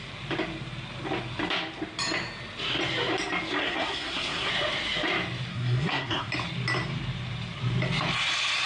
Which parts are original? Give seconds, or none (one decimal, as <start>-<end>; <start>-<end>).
0.0-3.6; 4.5-5.5; 6.3-8.7